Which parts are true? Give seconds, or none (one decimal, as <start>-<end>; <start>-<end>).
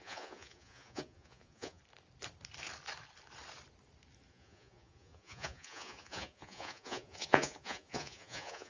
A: 1.8-4.3